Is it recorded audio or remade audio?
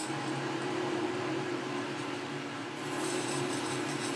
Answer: remade